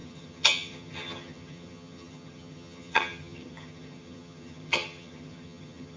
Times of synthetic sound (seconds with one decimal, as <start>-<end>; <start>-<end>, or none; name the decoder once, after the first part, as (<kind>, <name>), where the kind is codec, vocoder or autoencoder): 0.0-6.0 (vocoder, HiFi-GAN)